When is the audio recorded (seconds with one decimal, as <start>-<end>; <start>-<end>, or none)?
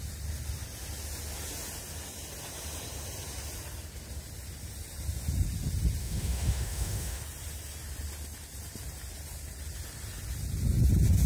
0.0-6.0; 7.2-11.3